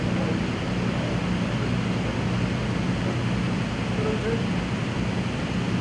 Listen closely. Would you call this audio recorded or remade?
recorded